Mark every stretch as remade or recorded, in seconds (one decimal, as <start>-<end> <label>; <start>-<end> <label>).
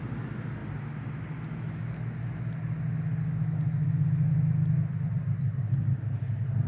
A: 0.0-6.7 recorded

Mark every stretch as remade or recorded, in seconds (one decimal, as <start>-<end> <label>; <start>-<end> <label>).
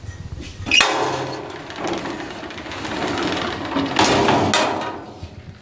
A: 0.0-5.6 recorded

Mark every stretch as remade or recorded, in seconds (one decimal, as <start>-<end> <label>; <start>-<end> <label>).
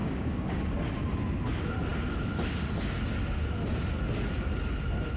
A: 0.0-0.6 remade; 0.6-5.2 recorded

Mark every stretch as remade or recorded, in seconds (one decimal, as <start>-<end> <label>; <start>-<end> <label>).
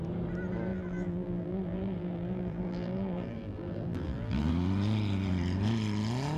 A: 0.0-0.7 recorded; 0.7-4.5 remade; 4.5-6.4 recorded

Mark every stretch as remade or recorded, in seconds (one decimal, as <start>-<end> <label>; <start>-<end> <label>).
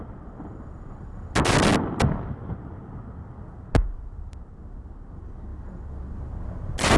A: 0.0-7.0 recorded